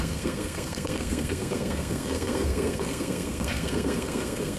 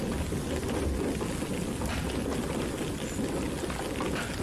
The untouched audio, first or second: second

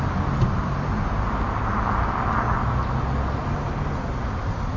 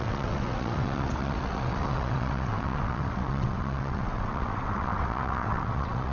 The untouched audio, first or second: first